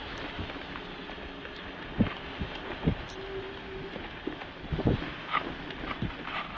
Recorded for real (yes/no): yes